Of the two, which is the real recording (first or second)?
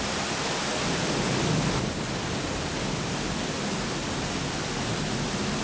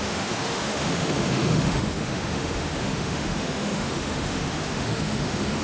first